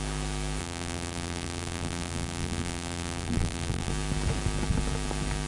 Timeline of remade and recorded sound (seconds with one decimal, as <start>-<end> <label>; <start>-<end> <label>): 0.0-0.6 recorded; 0.6-3.9 remade; 3.9-5.5 recorded